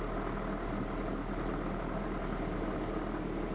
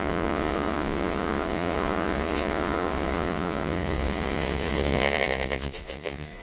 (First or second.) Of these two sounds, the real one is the first